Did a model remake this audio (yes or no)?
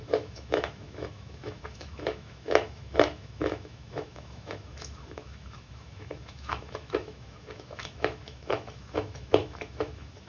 yes